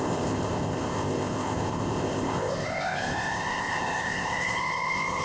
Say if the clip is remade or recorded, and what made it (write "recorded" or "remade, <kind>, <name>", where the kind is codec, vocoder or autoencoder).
remade, codec, ZipCodec